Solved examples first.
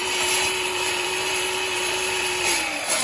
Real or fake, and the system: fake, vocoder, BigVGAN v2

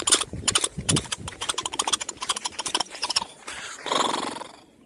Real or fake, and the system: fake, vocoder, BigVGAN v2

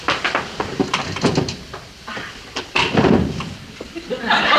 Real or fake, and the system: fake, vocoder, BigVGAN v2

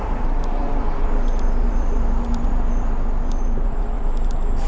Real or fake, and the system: fake, vocoder, BigVGAN v2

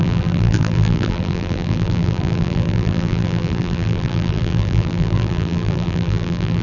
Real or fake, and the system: fake, vocoder, BigVGAN v2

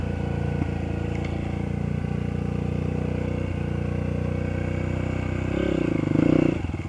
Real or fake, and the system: real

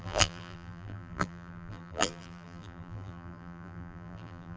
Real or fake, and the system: fake, vocoder, BigVGAN v2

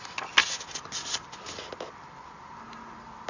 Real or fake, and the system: real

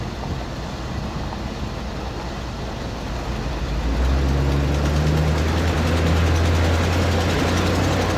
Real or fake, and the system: real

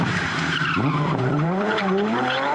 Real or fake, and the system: fake, vocoder, BigVGAN v2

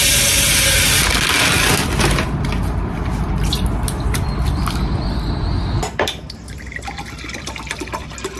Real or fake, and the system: real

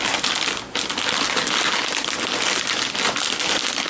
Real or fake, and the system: real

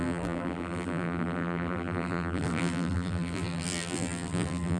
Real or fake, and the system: fake, vocoder, BigVGAN v2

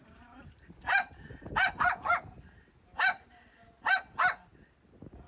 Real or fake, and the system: real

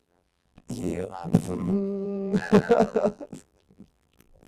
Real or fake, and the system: fake, vocoder, BigVGAN v2